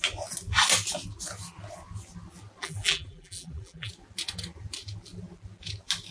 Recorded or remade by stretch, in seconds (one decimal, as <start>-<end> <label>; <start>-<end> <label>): 0.0-2.6 recorded; 2.6-3.9 remade; 3.9-6.1 recorded